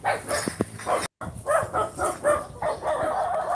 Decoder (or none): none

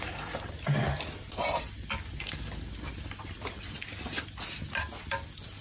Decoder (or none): none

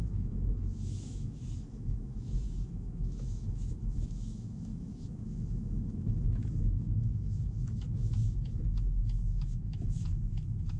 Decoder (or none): autoencoder, DAC-VAE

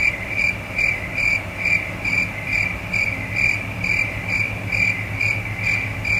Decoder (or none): none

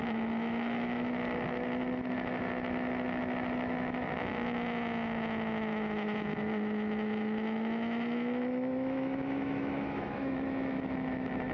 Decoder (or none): autoencoder, DAC-VAE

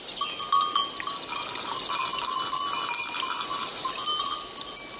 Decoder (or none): none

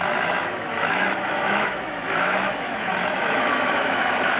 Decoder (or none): autoencoder, DAC-VAE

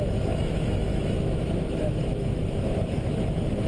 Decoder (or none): autoencoder, DAC-VAE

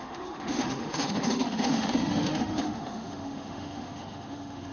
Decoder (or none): autoencoder, DAC-VAE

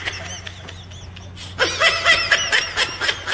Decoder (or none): none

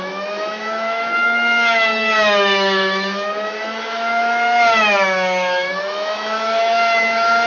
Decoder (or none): autoencoder, DAC-VAE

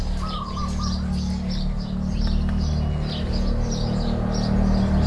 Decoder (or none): none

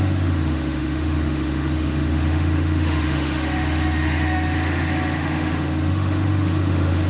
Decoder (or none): autoencoder, DAC-VAE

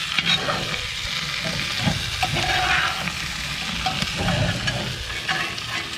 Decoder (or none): none